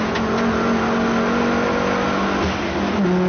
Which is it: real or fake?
real